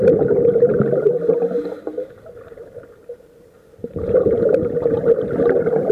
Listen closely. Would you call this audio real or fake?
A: real